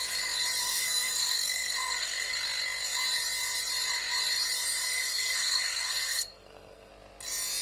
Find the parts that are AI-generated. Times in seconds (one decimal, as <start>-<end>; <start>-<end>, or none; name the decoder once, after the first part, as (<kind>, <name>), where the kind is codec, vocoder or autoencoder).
0.6-2.3 (codec, SNAC); 4.8-6.9